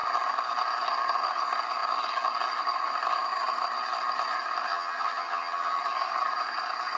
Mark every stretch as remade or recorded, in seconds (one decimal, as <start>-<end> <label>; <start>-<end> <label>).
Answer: 0.0-4.7 recorded; 4.7-5.8 remade; 5.8-7.0 recorded